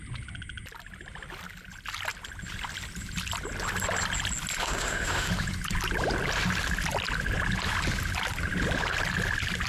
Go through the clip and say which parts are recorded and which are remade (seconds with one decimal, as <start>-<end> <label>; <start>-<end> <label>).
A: 0.0-4.6 recorded; 4.6-5.3 remade; 5.3-9.7 recorded

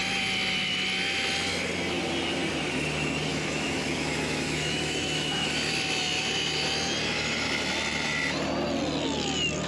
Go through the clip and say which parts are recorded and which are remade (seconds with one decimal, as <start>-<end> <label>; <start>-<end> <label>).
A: 0.0-3.3 recorded; 3.3-5.5 remade; 5.5-9.7 recorded

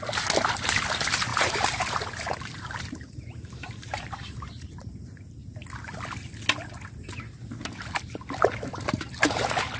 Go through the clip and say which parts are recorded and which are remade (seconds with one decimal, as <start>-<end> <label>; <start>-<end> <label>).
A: 0.0-1.3 recorded; 1.3-4.7 remade; 4.7-9.8 recorded

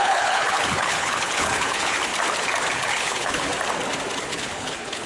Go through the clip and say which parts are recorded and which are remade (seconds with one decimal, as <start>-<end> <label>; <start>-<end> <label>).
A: 0.0-2.0 remade; 2.0-2.7 recorded; 2.7-3.5 remade; 3.5-4.2 recorded; 4.2-5.1 remade

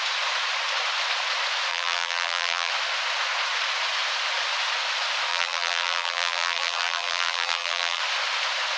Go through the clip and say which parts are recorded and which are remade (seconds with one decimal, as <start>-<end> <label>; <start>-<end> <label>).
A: 0.0-1.7 recorded; 1.7-2.7 remade; 2.7-5.3 recorded; 5.3-8.0 remade; 8.0-8.8 recorded